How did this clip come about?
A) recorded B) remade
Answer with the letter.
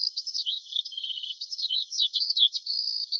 B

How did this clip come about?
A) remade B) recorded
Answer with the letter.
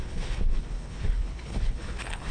A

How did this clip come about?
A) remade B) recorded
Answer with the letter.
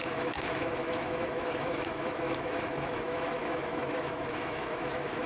A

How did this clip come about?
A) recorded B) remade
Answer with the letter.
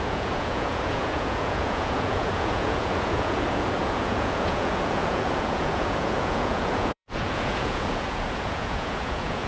B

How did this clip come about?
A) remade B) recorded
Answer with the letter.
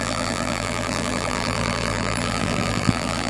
A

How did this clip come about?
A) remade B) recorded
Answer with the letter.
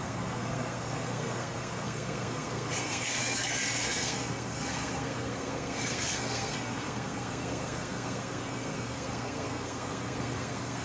A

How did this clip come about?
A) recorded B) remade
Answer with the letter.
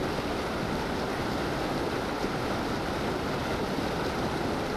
A